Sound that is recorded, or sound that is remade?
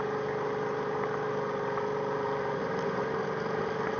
recorded